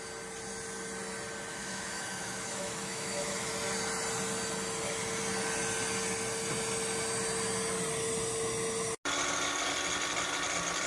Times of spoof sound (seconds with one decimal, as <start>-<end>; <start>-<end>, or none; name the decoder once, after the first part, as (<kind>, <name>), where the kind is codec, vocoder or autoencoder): 1.5-3.5 (autoencoder, DAC-VAE)